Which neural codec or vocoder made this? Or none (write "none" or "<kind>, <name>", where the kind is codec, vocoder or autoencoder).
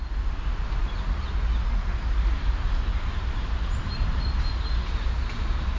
none